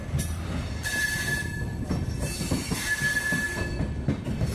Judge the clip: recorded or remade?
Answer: recorded